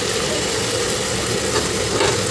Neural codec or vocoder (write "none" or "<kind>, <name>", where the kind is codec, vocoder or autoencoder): none